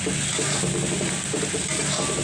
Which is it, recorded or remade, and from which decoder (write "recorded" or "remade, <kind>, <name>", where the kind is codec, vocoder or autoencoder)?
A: recorded